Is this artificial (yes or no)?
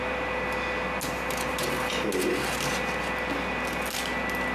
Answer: no